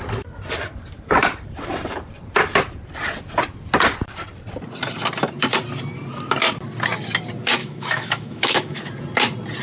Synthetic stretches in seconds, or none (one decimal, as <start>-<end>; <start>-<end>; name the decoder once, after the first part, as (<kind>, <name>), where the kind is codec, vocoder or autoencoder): 7.6-8.9 (autoencoder, DAC-VAE)